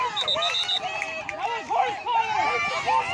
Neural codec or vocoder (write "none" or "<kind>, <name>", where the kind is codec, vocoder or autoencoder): none